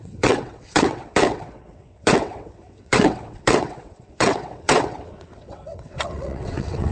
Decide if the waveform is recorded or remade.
remade